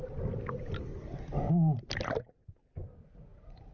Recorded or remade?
recorded